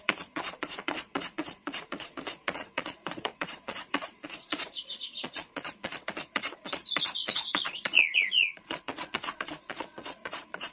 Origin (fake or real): fake